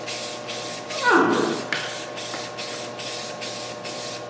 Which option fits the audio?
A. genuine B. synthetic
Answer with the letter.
A